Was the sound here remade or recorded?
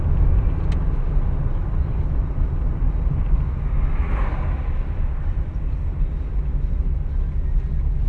recorded